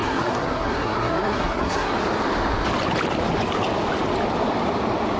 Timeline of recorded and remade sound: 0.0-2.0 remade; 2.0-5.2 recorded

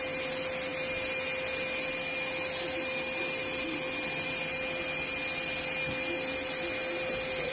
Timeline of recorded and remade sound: 0.0-7.5 recorded

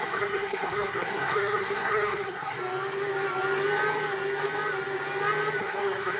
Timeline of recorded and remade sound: 0.0-2.6 remade; 2.6-5.6 recorded; 5.6-6.2 remade

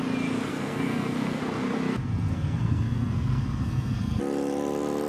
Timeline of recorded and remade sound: 0.0-0.5 recorded; 0.5-1.4 remade; 1.4-1.9 recorded; 1.9-4.2 remade; 4.2-5.1 recorded

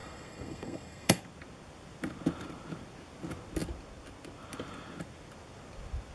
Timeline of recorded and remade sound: 0.0-1.2 remade; 1.2-6.1 recorded

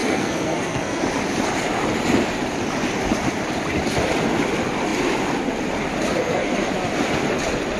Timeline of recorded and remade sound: 0.0-1.0 remade; 1.0-6.2 recorded; 6.2-6.7 remade; 6.7-7.8 recorded

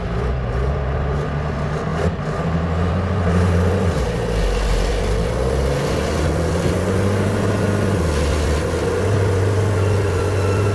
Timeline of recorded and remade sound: 0.0-10.7 recorded